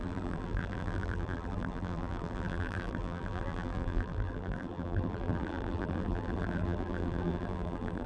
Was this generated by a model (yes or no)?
yes